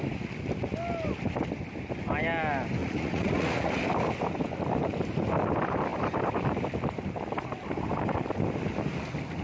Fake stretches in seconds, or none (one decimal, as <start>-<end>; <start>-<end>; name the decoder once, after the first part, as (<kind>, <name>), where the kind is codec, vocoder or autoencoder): 2.8-3.7 (vocoder, Vocos)